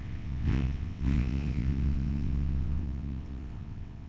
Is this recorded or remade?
remade